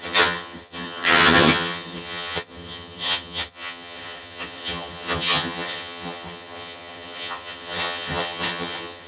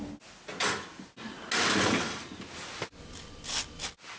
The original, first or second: second